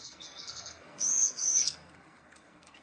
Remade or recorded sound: remade